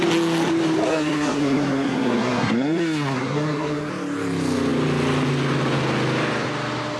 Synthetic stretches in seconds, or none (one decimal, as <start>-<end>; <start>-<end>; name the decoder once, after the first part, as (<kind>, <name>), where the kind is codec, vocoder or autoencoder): 0.9-3.9 (codec, SNAC)

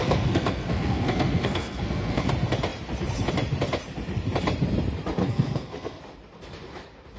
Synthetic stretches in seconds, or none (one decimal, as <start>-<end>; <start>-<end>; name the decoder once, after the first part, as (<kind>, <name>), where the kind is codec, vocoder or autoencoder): 0.0-2.3 (codec, SNAC); 5.2-6.0